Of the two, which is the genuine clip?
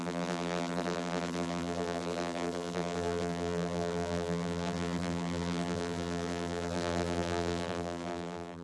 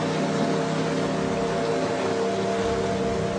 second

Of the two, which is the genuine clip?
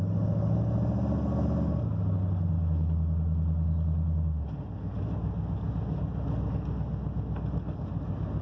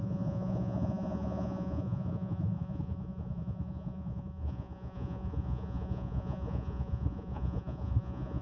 first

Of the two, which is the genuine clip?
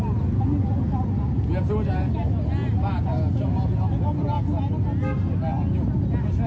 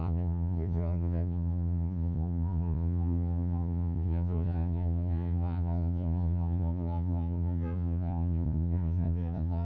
first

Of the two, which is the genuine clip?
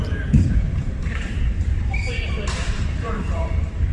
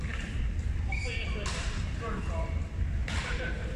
second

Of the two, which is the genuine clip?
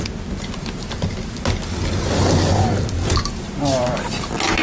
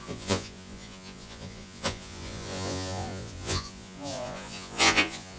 first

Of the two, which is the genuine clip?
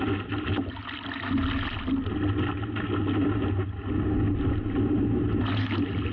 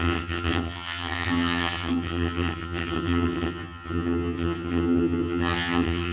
first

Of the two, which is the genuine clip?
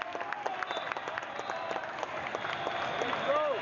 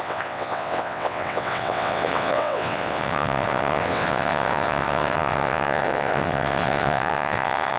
first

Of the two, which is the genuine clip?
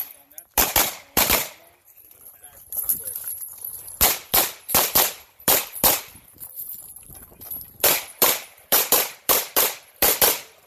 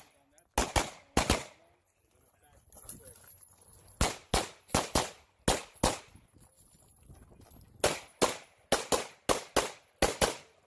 second